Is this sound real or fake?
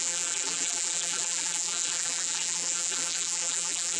fake